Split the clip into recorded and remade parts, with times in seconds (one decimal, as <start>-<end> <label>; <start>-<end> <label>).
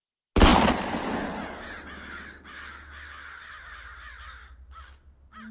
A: 0.0-5.5 recorded